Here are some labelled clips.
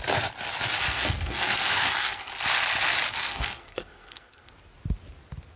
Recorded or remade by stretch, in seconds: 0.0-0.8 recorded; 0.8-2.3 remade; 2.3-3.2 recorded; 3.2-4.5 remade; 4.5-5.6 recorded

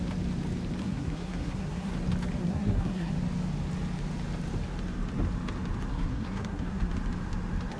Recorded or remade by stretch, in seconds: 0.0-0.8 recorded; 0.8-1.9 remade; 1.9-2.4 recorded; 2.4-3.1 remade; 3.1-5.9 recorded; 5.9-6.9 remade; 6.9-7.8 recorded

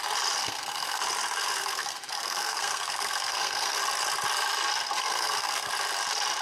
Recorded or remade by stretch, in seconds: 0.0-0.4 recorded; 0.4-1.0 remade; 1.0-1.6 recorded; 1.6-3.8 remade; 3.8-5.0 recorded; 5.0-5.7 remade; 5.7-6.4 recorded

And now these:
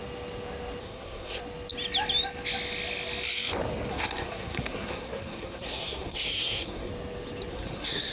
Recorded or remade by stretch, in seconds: 0.0-0.8 recorded; 0.8-1.4 remade; 1.4-3.9 recorded; 3.9-6.9 remade; 6.9-7.5 recorded; 7.5-8.1 remade

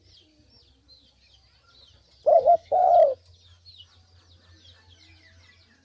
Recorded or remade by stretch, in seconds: 0.0-2.3 recorded; 2.3-2.9 remade; 2.9-5.8 recorded